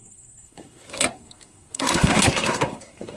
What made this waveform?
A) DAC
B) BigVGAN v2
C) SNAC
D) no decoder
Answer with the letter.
C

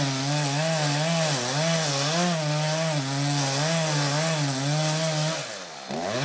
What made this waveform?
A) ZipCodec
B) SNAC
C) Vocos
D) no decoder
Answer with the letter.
D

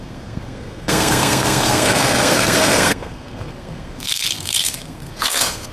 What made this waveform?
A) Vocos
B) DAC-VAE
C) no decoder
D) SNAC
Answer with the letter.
D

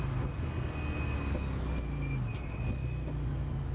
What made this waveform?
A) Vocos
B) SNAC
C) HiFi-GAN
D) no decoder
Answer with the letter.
D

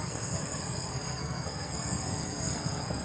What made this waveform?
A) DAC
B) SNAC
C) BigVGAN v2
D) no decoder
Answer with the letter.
B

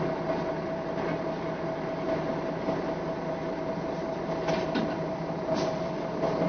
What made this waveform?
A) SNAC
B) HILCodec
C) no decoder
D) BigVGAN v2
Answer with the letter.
C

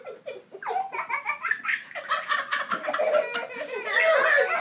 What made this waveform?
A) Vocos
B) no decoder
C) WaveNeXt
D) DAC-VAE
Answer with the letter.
B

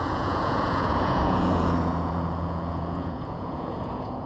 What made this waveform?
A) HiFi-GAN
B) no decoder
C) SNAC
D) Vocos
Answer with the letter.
D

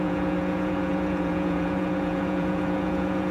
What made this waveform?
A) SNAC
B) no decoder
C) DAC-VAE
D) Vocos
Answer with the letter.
D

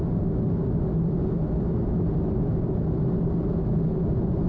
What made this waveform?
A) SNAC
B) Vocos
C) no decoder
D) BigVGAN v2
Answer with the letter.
C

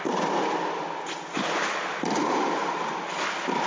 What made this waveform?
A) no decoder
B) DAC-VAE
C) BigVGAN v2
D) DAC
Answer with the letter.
A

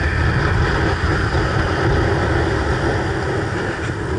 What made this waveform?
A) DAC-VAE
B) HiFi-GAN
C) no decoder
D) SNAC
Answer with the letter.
C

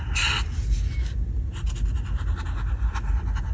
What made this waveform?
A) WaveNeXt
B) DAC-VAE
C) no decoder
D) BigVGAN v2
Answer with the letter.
C